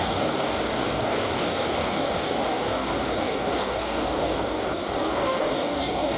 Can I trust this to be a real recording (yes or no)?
no